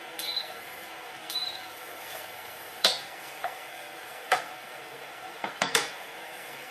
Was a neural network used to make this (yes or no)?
yes